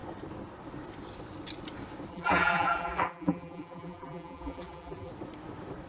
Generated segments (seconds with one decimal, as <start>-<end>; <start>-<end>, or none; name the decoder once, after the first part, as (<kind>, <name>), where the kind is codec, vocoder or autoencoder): 2.1-5.1 (vocoder, BigVGAN v2)